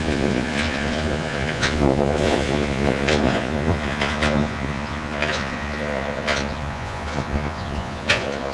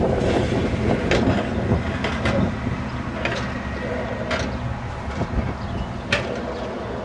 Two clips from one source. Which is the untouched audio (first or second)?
second